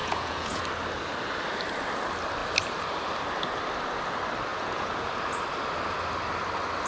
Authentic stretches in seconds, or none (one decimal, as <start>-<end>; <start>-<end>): 0.6-4.5; 5.1-6.9